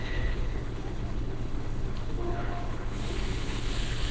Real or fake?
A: fake